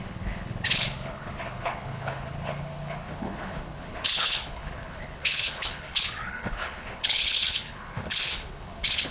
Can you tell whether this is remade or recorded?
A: remade